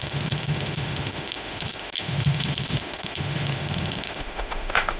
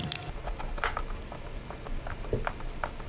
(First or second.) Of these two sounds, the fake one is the first